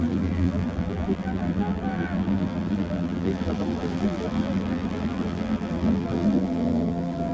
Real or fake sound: fake